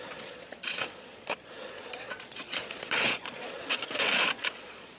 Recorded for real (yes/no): no